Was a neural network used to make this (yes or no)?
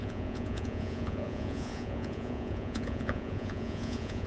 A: yes